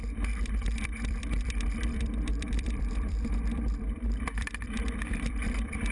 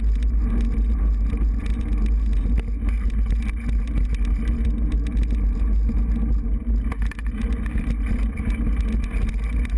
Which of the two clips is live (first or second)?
second